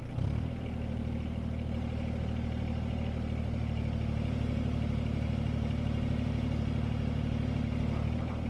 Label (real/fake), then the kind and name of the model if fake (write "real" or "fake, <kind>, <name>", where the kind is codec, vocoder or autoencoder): real